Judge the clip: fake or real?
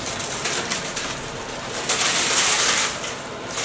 real